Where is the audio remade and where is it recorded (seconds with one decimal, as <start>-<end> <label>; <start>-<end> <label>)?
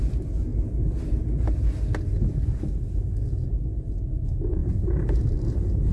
0.0-4.6 recorded; 4.6-5.9 remade